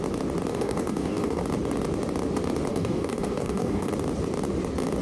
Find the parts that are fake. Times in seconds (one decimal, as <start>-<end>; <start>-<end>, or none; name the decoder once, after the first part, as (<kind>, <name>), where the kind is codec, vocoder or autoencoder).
0.5-1.4 (codec, DAC); 2.7-3.9